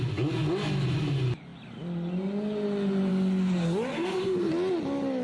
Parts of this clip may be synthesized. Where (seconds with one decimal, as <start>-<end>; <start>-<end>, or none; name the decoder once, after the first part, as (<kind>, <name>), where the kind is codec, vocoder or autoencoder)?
3.9-4.5 (codec, SNAC)